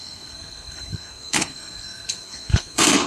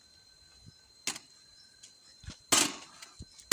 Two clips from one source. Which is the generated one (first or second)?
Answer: first